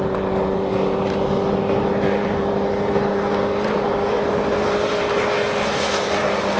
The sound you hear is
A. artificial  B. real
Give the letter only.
B